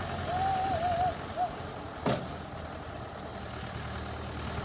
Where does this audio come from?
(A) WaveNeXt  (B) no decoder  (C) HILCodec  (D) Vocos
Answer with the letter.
B